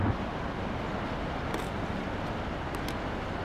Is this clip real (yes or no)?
yes